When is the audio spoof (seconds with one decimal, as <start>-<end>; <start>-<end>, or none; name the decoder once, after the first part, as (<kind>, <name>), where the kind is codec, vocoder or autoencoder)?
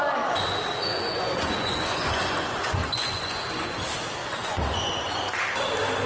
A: 0.9-3.8 (vocoder, Vocos); 4.2-5.2